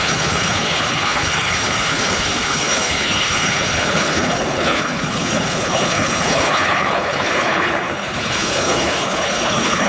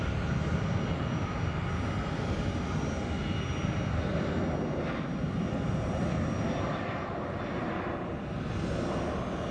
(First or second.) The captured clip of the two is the second